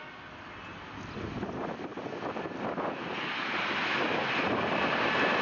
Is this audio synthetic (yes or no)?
no